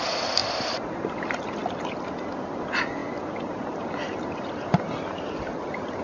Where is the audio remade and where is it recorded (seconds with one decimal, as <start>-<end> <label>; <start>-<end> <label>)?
0.0-0.4 recorded; 0.4-1.1 remade; 1.1-6.0 recorded